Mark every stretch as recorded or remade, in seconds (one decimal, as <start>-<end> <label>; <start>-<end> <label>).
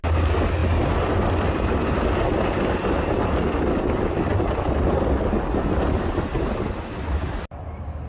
0.0-8.1 recorded